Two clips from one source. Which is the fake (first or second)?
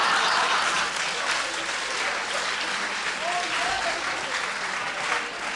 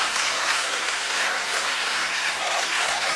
second